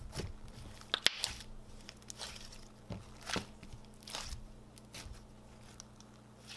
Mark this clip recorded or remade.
recorded